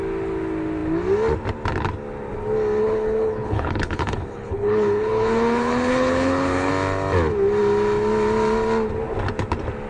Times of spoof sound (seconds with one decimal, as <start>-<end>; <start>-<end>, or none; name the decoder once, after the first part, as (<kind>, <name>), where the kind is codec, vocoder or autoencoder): 2.8-6.7 (codec, HILCodec)